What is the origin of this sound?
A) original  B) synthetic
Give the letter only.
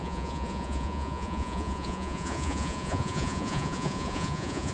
B